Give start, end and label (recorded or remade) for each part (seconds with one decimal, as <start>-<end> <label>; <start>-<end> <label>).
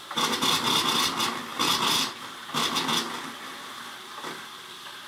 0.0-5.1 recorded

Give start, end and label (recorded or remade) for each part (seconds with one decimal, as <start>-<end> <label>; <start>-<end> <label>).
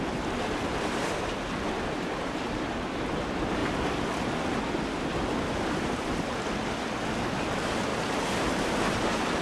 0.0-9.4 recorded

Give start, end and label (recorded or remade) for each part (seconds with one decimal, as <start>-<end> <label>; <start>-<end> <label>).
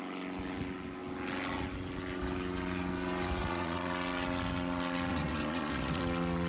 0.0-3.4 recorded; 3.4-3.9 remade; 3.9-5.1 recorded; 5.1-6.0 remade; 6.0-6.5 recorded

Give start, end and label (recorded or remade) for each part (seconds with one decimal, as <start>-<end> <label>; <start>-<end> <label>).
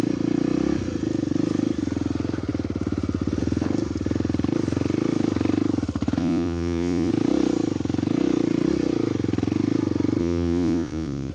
0.0-6.2 recorded; 6.2-7.1 remade; 7.1-10.2 recorded; 10.2-11.3 remade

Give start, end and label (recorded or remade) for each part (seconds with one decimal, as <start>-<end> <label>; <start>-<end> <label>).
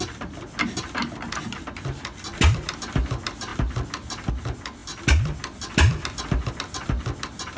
0.0-7.6 recorded